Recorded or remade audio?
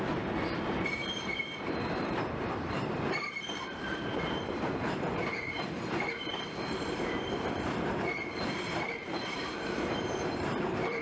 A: remade